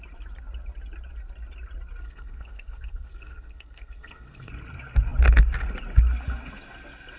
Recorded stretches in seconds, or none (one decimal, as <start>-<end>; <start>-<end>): 0.0-2.0; 4.5-7.2